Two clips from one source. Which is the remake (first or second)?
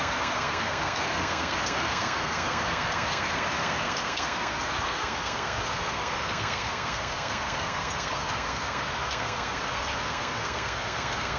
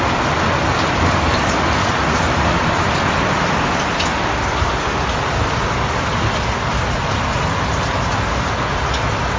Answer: first